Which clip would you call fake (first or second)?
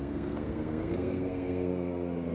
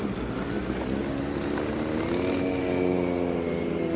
first